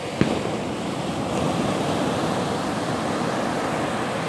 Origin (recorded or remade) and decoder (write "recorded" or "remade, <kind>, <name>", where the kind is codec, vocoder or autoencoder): recorded